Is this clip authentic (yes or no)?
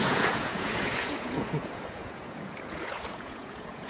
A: no